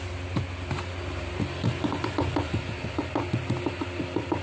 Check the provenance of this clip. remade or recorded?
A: recorded